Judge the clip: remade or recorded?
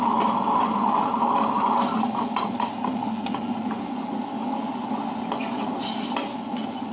recorded